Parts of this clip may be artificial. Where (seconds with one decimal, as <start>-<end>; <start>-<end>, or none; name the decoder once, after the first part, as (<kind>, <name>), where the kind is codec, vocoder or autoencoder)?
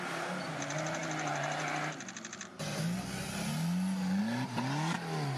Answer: none